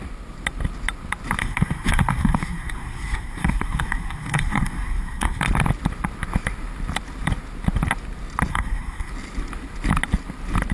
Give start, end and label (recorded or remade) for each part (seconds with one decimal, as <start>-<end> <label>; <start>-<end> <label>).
0.0-1.4 recorded; 1.4-5.4 remade; 5.4-8.5 recorded; 8.5-9.1 remade; 9.1-10.7 recorded